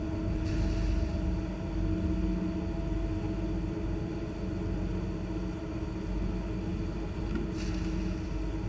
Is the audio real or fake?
real